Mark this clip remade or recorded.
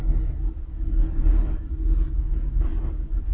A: recorded